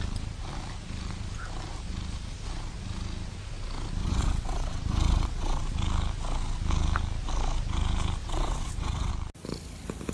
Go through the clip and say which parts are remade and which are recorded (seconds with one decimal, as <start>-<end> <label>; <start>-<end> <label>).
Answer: 0.0-4.0 recorded; 4.0-5.6 remade; 5.6-8.2 recorded; 8.2-9.1 remade; 9.1-10.1 recorded